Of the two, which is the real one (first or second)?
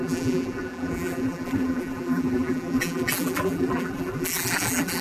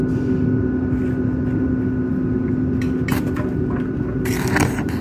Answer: second